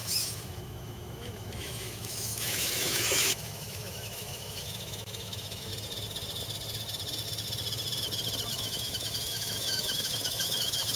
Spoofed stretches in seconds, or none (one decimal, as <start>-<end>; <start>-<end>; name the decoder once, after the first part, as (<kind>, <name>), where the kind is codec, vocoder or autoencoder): 0.0-5.7 (autoencoder, DAC-VAE); 8.5-11.0